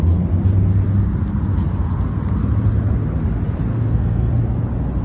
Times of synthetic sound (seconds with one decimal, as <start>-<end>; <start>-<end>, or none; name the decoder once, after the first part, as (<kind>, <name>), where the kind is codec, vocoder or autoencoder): 3.7-4.3 (codec, SNAC)